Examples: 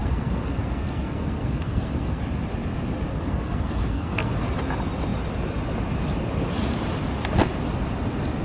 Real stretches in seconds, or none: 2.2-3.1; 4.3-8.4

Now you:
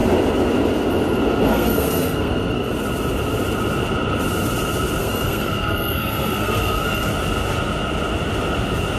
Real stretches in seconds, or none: 0.0-1.5; 2.7-5.0; 7.1-9.0

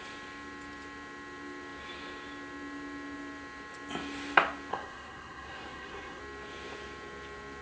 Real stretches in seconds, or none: 0.0-4.7; 6.2-7.6